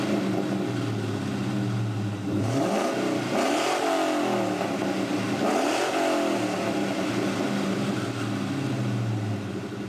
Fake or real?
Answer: real